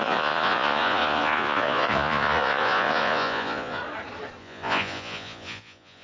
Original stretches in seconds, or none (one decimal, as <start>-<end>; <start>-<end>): 3.8-4.4